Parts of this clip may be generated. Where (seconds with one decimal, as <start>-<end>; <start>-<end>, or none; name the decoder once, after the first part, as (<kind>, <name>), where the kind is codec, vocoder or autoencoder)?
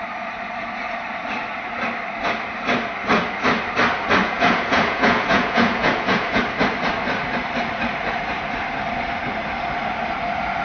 4.2-6.4 (vocoder, Vocos)